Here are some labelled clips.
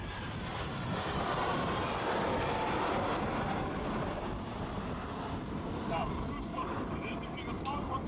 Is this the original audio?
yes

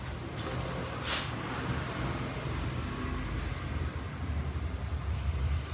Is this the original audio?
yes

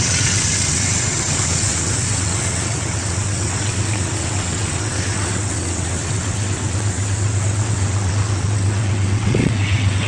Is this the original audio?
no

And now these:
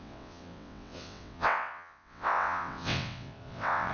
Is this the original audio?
no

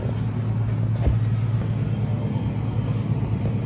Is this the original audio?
yes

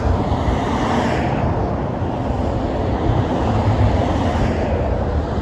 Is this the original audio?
yes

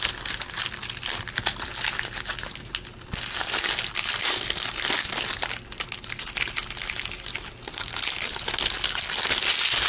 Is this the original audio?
yes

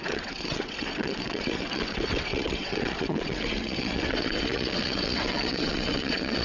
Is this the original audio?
no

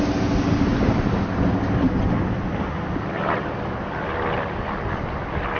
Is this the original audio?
yes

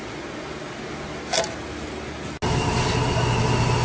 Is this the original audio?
yes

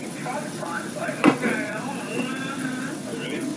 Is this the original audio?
no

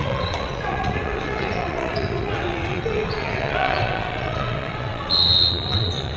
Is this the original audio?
no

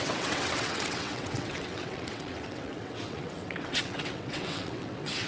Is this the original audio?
no